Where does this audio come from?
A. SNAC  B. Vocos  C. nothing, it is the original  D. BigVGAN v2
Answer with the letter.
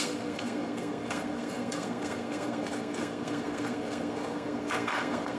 A